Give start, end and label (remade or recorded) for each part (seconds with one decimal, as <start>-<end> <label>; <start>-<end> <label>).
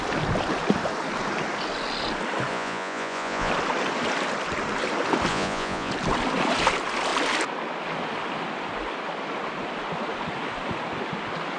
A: 0.0-2.5 recorded; 2.5-3.5 remade; 3.5-5.3 recorded; 5.3-5.9 remade; 5.9-11.6 recorded